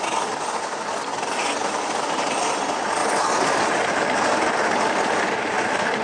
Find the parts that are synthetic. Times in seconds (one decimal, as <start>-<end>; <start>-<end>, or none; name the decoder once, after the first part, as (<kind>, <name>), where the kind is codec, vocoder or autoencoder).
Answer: 1.6-2.3 (vocoder, BigVGAN v2)